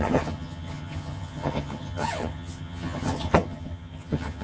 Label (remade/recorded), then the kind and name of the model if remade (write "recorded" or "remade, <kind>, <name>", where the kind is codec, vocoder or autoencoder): remade, vocoder, HiFi-GAN